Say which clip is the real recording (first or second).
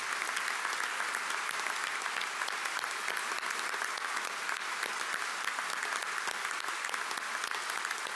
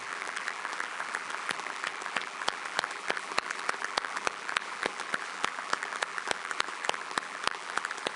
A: first